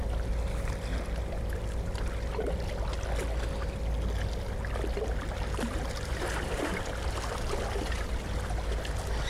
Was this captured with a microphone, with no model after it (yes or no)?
yes